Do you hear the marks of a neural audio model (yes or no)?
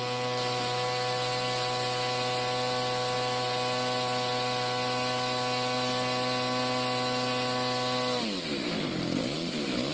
no